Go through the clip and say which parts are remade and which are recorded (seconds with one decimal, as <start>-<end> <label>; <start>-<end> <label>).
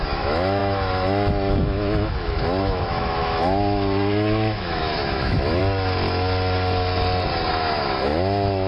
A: 0.0-5.6 remade; 5.6-7.5 recorded; 7.5-8.7 remade